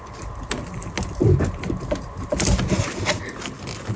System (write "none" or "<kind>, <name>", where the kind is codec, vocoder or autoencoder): none